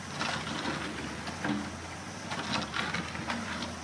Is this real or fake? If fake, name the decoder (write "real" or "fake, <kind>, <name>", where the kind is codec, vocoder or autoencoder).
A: real